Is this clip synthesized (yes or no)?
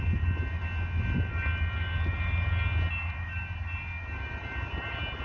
no